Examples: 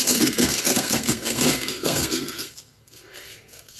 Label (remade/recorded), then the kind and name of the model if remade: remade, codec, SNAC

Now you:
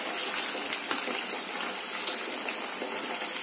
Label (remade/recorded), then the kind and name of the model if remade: recorded